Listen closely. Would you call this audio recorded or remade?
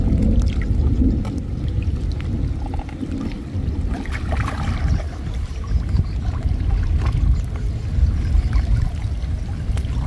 recorded